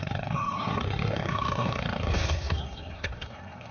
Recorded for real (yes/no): no